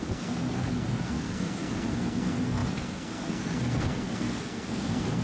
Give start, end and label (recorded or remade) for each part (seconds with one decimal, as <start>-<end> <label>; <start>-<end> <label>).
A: 0.0-5.2 remade

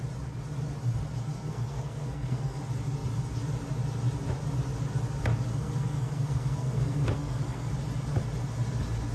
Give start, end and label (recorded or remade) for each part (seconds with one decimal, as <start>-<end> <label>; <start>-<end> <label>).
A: 0.0-1.2 recorded; 1.2-2.6 remade; 2.6-5.5 recorded; 5.5-7.7 remade; 7.7-9.1 recorded

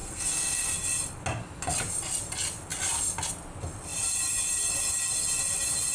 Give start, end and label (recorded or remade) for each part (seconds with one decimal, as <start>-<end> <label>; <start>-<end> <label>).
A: 0.0-0.8 remade; 0.8-5.9 recorded

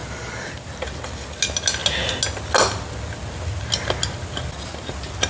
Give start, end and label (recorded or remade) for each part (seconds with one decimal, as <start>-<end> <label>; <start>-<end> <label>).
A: 0.0-5.3 recorded

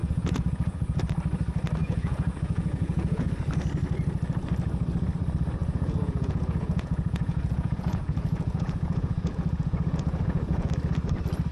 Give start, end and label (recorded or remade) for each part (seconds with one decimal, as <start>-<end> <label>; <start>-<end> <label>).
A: 0.0-1.0 remade; 1.0-1.8 recorded; 1.8-3.3 remade; 3.3-5.6 recorded; 5.6-10.7 remade; 10.7-11.5 recorded

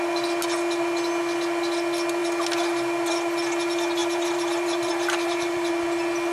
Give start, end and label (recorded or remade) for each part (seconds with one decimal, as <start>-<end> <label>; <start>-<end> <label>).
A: 0.0-4.0 recorded; 4.0-5.7 remade; 5.7-6.3 recorded